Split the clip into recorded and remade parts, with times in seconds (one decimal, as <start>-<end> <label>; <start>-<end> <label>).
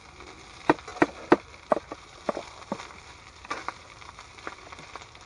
0.0-0.9 recorded; 0.9-4.1 remade; 4.1-5.3 recorded